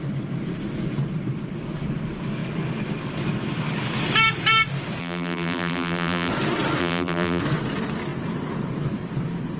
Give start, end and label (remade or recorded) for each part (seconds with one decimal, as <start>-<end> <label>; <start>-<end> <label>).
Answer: 0.0-5.0 recorded; 5.0-6.3 remade; 6.3-6.8 recorded; 6.8-7.4 remade; 7.4-9.6 recorded